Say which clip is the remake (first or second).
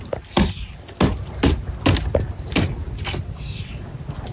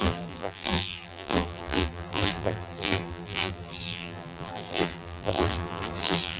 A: second